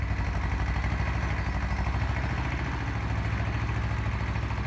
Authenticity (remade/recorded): recorded